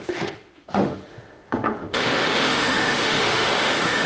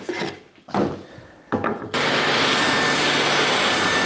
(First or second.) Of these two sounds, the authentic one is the second